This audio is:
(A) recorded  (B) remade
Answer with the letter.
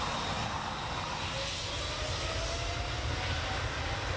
A